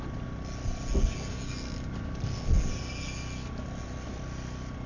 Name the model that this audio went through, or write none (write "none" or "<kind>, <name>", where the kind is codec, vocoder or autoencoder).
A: none